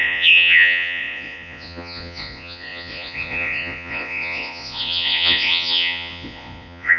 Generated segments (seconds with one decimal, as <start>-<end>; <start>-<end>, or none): 0.0-7.0